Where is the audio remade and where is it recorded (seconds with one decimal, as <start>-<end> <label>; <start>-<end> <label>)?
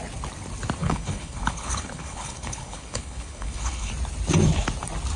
0.0-0.8 recorded; 0.8-3.9 remade; 3.9-5.2 recorded